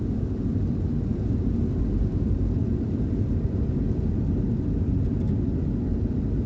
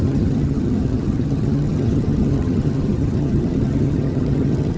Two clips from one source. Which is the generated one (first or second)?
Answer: second